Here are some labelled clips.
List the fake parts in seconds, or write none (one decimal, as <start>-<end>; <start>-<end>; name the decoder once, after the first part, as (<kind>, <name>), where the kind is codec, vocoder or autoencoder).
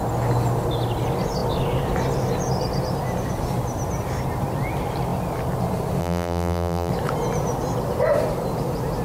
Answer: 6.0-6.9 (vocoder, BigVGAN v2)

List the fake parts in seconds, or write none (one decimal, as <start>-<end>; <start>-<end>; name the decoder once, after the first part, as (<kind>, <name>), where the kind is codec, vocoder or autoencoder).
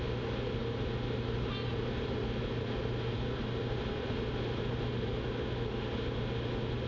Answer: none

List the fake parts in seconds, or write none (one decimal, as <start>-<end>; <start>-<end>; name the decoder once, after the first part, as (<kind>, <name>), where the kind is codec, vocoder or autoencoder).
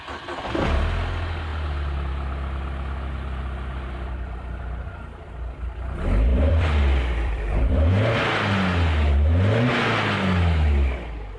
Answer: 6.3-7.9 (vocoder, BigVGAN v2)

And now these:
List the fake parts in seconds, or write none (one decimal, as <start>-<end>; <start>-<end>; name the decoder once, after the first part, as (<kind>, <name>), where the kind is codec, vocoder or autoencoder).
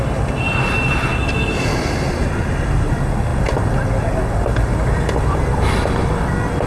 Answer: none